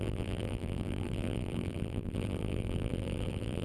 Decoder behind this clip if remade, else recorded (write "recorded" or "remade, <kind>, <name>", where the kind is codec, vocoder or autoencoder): remade, vocoder, BigVGAN v2